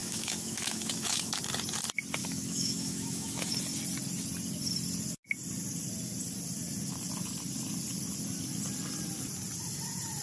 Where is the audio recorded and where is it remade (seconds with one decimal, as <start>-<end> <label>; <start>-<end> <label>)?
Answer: 0.0-1.4 remade; 1.4-2.2 recorded; 2.2-3.5 remade; 3.5-10.2 recorded